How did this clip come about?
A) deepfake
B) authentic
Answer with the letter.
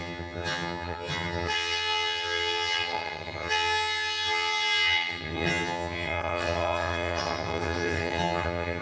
A